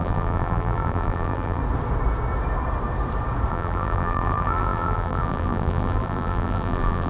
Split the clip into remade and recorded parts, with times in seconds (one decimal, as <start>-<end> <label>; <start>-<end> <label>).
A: 0.0-1.6 remade; 1.6-3.5 recorded; 3.5-7.1 remade